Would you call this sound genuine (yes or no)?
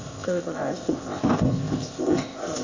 no